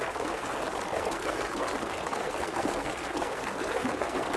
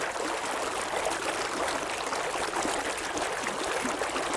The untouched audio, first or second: second